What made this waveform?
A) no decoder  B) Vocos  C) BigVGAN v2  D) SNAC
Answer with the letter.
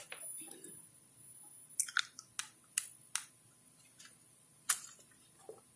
A